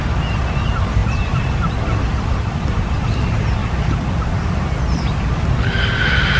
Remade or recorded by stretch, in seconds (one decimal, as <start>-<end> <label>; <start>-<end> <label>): 0.0-1.0 recorded; 1.0-1.7 remade; 1.7-2.3 recorded; 2.3-3.0 remade; 3.0-3.6 recorded; 3.6-4.8 remade; 4.8-6.4 recorded